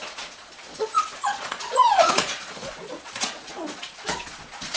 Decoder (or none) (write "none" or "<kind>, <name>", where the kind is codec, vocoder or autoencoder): vocoder, Vocos